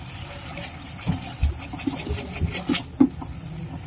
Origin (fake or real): real